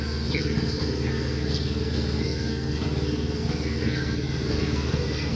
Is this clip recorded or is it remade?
remade